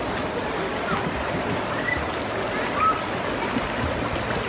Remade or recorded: recorded